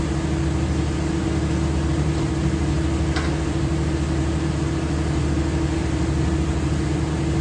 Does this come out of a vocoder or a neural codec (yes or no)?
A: no